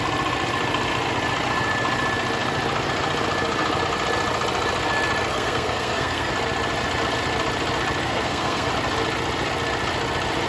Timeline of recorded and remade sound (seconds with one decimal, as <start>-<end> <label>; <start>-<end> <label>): 0.0-5.3 recorded; 5.3-6.3 remade; 6.3-8.0 recorded; 8.0-8.7 remade; 8.7-10.5 recorded